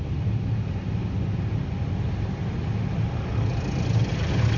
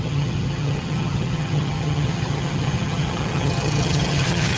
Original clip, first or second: first